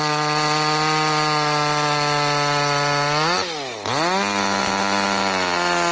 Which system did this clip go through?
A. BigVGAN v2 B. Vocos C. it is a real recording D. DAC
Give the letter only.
C